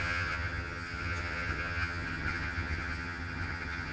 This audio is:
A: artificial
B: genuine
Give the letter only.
A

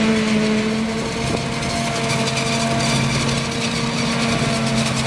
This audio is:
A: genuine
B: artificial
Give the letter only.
A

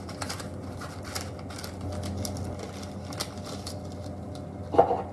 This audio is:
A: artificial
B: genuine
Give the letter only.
B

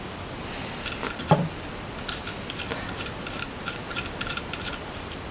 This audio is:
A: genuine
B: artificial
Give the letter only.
A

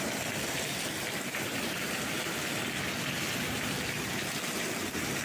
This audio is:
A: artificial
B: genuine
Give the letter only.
A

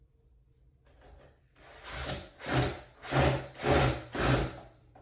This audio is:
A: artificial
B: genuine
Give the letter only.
B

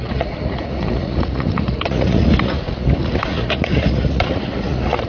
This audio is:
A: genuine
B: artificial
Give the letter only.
B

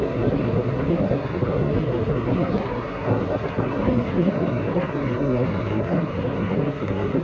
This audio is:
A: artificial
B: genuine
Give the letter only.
A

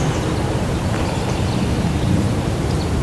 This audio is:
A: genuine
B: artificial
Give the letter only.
A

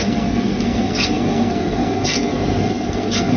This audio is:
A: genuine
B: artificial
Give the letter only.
B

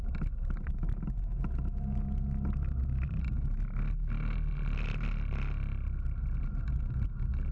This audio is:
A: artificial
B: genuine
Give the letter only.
B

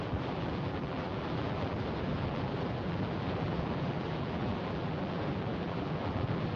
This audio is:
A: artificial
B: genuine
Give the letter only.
A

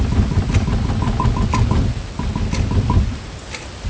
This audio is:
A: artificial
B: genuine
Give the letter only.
B